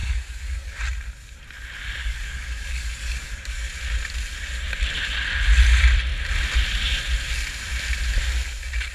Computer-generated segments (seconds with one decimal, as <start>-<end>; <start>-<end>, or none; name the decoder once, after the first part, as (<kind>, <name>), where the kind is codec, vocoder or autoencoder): 0.0-0.8 (codec, DAC); 2.0-3.7